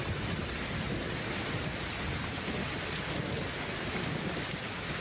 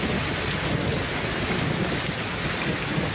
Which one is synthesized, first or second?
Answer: first